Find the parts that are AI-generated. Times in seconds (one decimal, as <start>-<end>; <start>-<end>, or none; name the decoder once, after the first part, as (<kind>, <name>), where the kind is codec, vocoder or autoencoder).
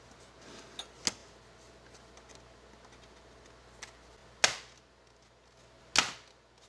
none